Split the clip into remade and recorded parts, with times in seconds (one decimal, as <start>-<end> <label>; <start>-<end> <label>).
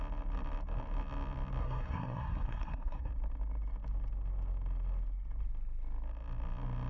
0.0-1.6 recorded; 1.6-3.1 remade; 3.1-6.9 recorded